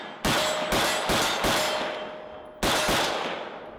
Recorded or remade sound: recorded